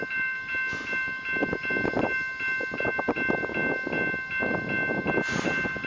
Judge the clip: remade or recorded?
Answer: recorded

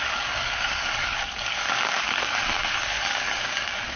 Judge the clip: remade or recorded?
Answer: remade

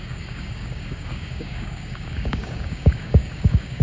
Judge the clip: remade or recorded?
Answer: remade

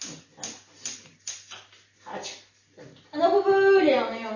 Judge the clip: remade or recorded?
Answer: recorded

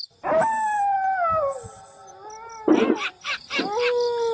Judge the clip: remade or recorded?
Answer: recorded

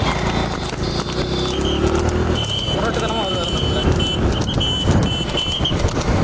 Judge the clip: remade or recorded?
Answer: recorded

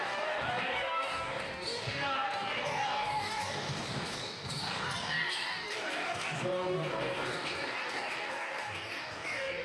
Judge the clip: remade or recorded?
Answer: remade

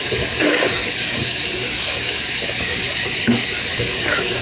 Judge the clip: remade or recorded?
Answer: remade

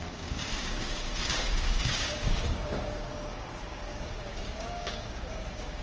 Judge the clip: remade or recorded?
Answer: remade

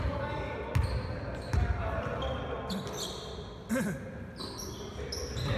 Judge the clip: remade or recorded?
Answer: recorded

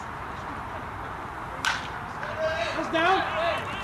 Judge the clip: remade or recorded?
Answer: recorded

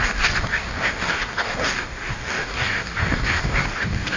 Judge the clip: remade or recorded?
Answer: remade